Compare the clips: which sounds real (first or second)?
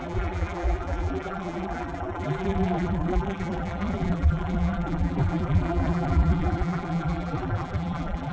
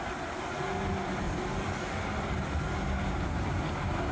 second